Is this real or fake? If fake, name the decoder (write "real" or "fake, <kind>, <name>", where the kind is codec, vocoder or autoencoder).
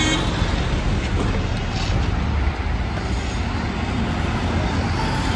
real